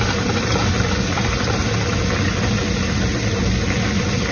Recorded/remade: recorded